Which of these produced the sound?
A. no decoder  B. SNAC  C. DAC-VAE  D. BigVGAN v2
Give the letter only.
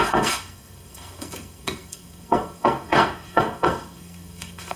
B